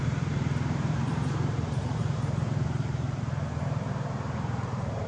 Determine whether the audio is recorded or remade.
remade